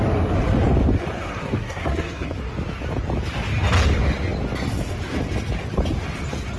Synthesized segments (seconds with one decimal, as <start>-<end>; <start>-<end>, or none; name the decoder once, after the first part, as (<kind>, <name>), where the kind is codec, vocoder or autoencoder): 1.3-2.5 (codec, SNAC)